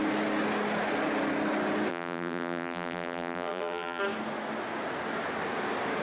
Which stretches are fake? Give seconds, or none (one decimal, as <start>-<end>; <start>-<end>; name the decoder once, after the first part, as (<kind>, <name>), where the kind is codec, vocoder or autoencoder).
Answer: 1.9-4.0 (vocoder, BigVGAN v2)